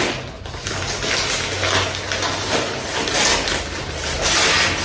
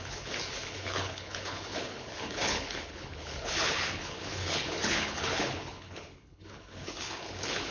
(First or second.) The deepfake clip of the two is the second